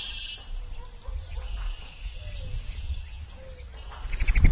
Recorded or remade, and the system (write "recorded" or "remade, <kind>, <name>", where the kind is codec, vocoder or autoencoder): recorded